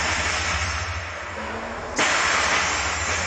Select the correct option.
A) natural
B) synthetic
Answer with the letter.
A